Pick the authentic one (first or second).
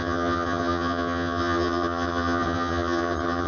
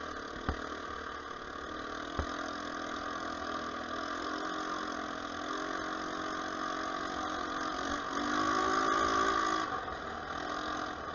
second